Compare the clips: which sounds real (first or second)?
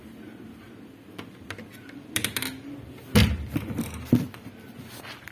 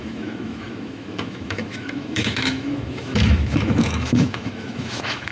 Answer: first